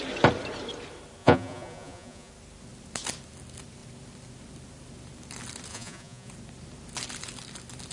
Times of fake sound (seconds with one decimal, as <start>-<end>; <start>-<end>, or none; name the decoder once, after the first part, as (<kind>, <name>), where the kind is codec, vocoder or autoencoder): 1.2-2.3 (vocoder, Vocos); 5.7-6.3